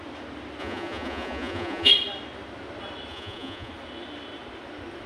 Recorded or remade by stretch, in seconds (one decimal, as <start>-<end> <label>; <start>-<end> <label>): 0.0-0.6 recorded; 0.6-1.9 remade; 1.9-3.1 recorded; 3.1-3.7 remade; 3.7-5.1 recorded